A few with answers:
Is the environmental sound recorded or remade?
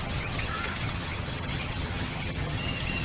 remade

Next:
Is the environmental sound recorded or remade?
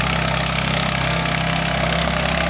remade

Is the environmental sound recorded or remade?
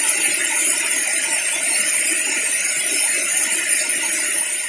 recorded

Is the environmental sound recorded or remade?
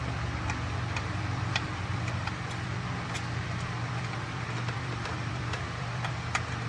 remade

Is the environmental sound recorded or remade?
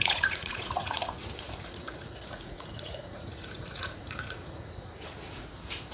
remade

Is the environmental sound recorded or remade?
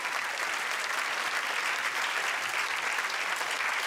recorded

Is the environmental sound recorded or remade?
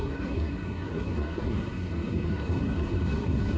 remade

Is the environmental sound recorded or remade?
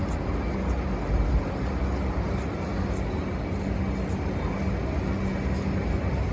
recorded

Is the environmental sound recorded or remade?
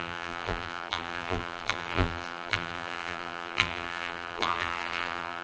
remade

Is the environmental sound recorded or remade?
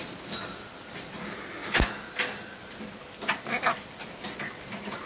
recorded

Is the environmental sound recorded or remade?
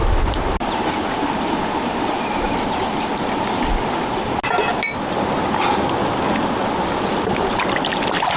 recorded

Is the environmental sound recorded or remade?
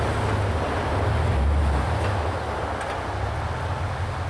recorded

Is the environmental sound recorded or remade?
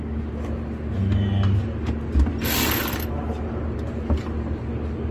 recorded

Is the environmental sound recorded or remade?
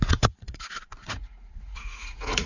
remade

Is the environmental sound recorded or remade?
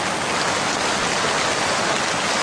recorded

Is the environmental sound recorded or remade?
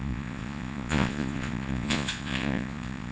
remade